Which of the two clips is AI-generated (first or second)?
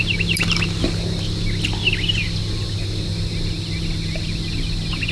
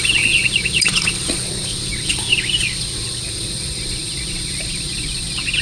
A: second